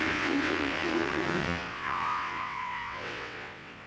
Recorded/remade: remade